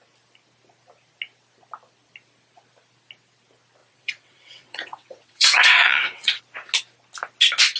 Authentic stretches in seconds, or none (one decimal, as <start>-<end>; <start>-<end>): 0.0-3.8; 6.4-7.8